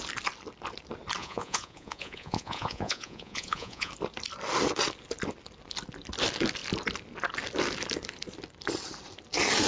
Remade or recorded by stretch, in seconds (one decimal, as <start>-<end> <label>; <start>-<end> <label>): 0.0-1.2 recorded; 1.2-3.9 remade; 3.9-9.7 recorded